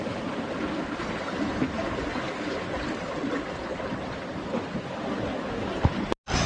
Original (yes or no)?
yes